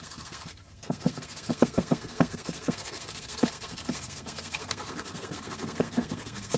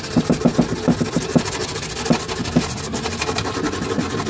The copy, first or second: first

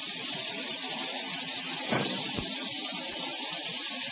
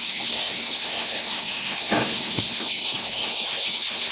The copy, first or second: second